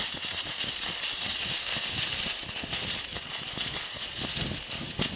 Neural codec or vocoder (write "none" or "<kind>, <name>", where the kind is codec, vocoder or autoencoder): none